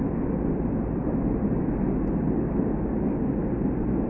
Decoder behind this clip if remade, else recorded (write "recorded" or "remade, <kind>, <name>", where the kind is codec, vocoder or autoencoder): recorded